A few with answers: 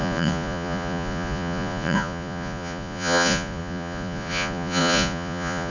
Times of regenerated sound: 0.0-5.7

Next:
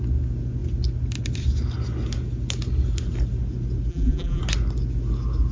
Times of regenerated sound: 3.9-4.4

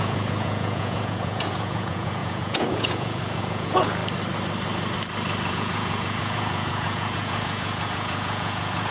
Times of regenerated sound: 0.0-4.0; 5.5-8.9

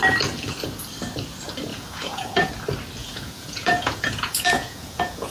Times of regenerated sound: 1.7-2.5; 3.0-5.3

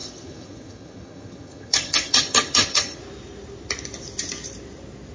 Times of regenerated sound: 0.0-3.0